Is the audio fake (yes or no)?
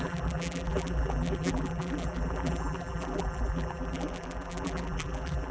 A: yes